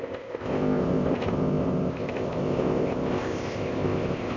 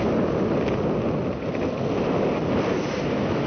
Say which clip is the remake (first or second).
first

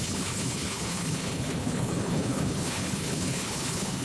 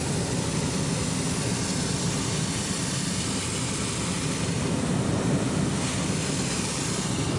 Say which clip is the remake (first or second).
first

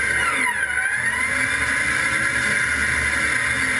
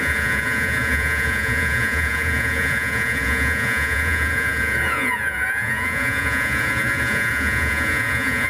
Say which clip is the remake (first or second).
second